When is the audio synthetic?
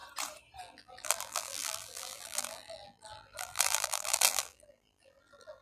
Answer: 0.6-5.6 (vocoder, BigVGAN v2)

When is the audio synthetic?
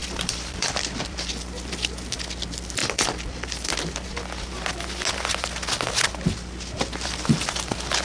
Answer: 0.0-1.3 (vocoder, BigVGAN v2); 2.8-3.7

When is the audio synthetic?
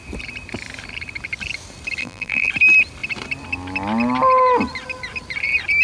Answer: 2.0-2.5 (vocoder, BigVGAN v2)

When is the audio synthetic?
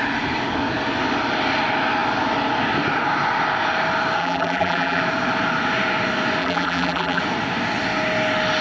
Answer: 4.2-5.0 (vocoder, BigVGAN v2); 6.4-7.2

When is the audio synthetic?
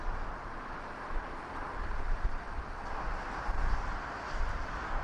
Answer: 0.5-3.2 (vocoder, BigVGAN v2)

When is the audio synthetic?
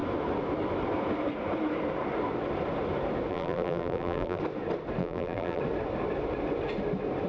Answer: 3.3-4.4 (vocoder, BigVGAN v2); 5.0-5.6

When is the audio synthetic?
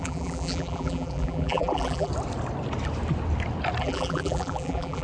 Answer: 0.0-2.1 (vocoder, BigVGAN v2); 3.8-5.0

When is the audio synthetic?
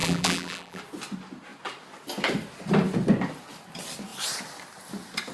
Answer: 0.0-0.8 (vocoder, BigVGAN v2)